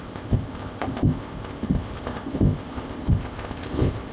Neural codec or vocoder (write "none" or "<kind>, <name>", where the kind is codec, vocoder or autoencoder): codec, ZipCodec